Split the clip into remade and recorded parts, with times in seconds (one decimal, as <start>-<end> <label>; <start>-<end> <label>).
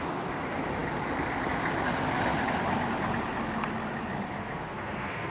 0.0-4.4 recorded; 4.4-5.3 remade